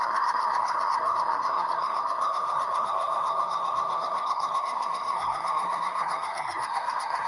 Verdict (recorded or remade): remade